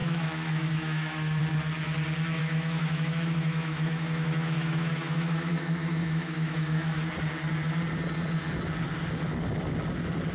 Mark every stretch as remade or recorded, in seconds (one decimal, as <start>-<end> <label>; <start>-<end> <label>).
0.0-1.4 remade; 1.4-2.4 recorded; 2.4-7.0 remade; 7.0-10.3 recorded